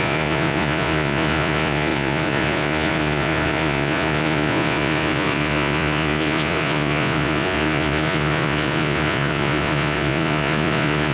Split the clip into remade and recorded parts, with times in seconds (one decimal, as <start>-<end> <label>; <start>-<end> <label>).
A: 0.0-11.1 remade